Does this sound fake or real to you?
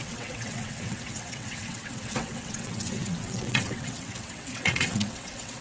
fake